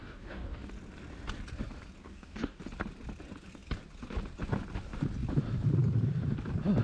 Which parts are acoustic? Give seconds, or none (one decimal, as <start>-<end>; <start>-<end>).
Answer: 0.7-2.0; 2.6-6.8